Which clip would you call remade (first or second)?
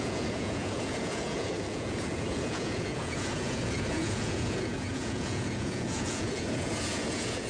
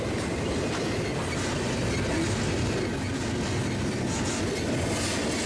first